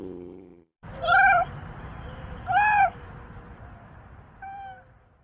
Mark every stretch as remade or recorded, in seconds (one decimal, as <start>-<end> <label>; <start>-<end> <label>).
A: 0.0-5.2 remade